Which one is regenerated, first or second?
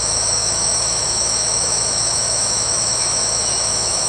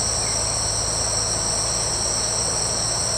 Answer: first